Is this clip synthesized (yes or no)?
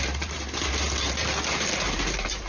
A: yes